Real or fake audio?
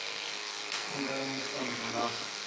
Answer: fake